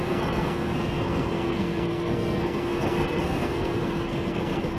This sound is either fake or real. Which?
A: fake